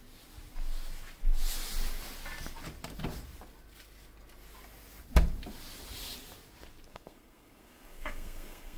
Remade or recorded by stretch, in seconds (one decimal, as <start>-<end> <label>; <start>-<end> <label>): 0.0-6.9 recorded; 6.9-8.8 remade